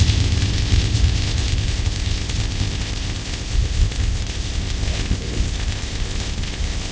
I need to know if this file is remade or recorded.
remade